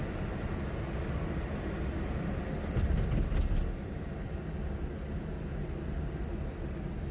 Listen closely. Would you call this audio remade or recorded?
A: recorded